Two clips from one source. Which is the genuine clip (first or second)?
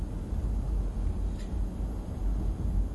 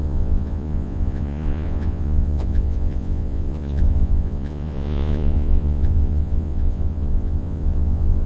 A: first